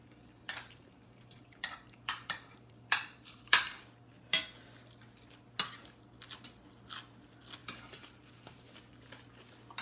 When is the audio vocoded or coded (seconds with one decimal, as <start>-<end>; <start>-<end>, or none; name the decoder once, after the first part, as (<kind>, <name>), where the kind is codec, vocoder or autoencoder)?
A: 0.0-3.8 (vocoder, BigVGAN v2); 7.6-8.6